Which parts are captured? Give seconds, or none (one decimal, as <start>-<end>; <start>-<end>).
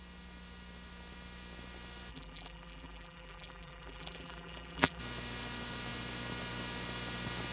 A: 0.0-2.1; 5.0-7.5